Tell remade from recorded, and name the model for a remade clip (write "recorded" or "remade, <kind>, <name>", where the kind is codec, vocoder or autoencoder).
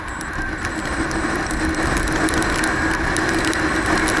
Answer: recorded